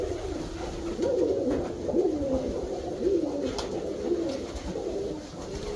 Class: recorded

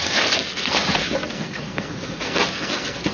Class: remade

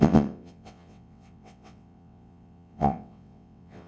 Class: remade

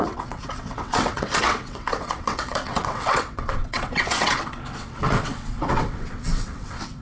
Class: remade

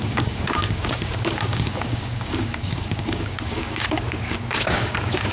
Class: remade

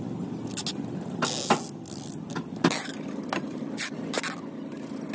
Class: recorded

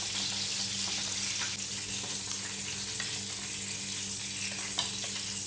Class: recorded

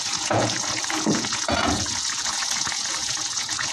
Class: remade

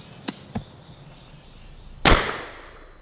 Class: recorded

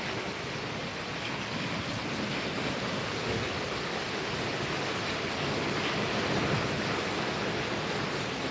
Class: recorded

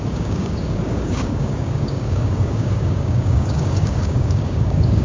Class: remade